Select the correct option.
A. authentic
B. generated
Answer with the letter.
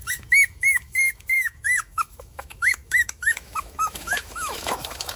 B